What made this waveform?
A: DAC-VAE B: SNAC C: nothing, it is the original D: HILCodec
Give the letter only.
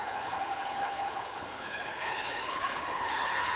D